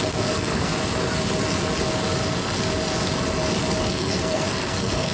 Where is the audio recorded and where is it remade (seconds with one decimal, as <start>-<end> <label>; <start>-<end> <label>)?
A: 0.0-0.7 remade; 0.7-3.8 recorded; 3.8-5.1 remade